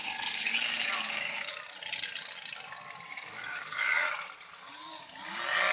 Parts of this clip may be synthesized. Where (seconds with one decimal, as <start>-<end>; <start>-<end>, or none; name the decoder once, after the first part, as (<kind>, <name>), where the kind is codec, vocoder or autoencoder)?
0.0-1.5 (codec, DAC); 3.1-4.1

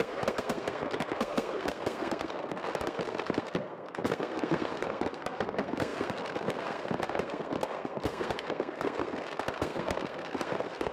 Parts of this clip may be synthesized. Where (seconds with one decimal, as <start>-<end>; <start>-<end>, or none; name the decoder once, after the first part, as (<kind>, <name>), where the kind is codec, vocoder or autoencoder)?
0.0-10.9 (codec, SNAC)

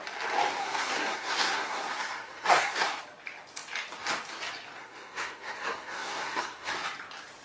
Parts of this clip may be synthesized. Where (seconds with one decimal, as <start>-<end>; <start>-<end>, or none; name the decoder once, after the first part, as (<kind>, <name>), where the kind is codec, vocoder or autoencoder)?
0.6-3.0 (codec, SNAC); 4.8-6.7

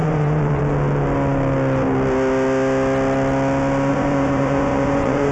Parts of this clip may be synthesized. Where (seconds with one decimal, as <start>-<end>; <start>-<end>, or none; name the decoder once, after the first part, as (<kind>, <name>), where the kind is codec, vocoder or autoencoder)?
0.0-0.6 (vocoder, Vocos); 3.9-5.3

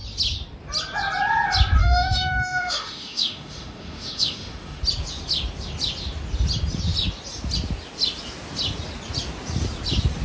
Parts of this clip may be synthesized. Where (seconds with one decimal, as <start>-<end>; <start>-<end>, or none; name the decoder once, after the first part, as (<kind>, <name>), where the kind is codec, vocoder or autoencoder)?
1.8-4.8 (autoencoder, DAC-VAE)